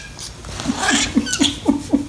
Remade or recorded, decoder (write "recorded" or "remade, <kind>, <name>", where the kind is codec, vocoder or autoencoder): recorded